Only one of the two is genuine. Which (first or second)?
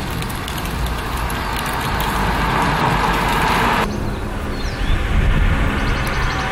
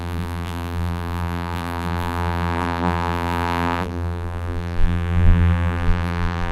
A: first